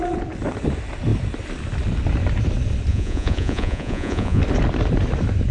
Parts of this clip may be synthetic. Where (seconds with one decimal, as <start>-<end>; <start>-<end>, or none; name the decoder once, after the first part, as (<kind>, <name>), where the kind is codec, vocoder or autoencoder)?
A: 2.9-4.4 (vocoder, Vocos)